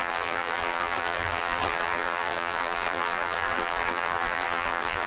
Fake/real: fake